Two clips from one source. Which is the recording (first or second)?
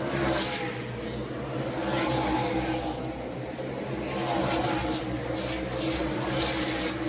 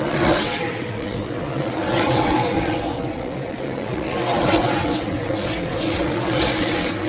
first